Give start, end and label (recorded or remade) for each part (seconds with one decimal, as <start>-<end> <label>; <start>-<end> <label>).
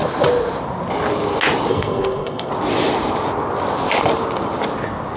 0.0-1.7 recorded; 1.7-2.5 remade; 2.5-5.2 recorded